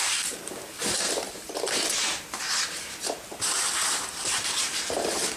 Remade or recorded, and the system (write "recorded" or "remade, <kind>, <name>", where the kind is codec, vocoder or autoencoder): remade, vocoder, BigVGAN v2